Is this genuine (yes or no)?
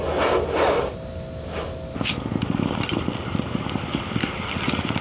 yes